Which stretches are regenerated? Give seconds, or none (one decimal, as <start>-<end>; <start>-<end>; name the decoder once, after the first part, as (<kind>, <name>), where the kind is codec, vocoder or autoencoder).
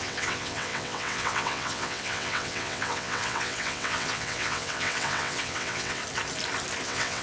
0.0-6.0 (vocoder, WaveNeXt); 6.8-7.2